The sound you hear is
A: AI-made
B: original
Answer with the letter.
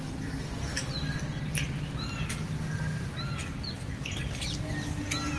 B